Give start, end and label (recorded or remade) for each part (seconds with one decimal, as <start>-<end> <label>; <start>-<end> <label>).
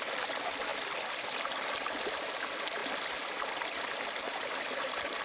0.0-5.2 recorded